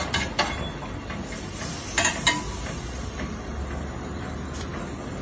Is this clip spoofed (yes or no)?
no